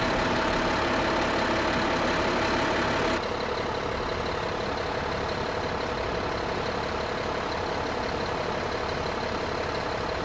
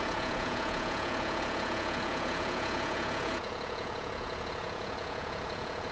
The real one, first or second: first